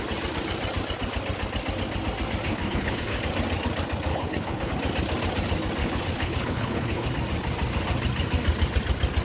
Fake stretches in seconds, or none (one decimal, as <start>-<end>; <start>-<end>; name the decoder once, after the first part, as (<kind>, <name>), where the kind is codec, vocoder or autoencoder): 2.5-3.2 (codec, HILCodec); 4.1-4.7; 5.8-7.1